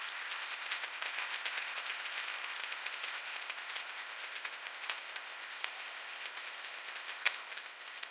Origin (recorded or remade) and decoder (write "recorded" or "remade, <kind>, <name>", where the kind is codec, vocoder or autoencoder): remade, codec, ZipCodec